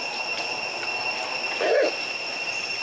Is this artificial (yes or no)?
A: no